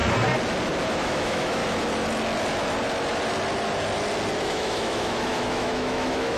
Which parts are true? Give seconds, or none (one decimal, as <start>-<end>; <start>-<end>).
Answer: 0.0-0.9; 1.6-4.4